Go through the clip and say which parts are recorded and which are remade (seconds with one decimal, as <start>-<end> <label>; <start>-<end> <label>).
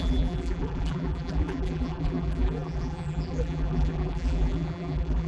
0.0-5.3 remade